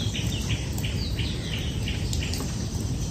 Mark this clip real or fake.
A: real